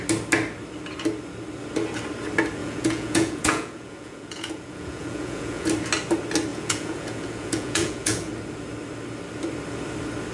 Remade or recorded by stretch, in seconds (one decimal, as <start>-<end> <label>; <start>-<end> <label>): 0.0-2.6 recorded; 2.6-5.7 remade; 5.7-6.5 recorded; 6.5-8.3 remade; 8.3-10.3 recorded